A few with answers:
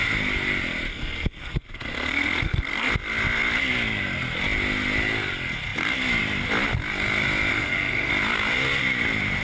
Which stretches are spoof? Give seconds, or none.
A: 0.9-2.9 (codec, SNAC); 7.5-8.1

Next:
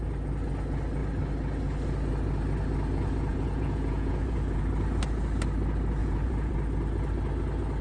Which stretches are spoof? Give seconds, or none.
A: 3.3-4.6 (vocoder, Vocos); 6.0-6.5